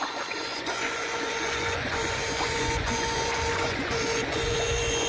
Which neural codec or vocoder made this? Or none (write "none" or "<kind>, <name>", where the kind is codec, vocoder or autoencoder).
vocoder, Vocos